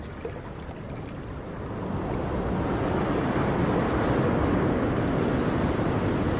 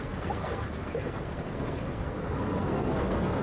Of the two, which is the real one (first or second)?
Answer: first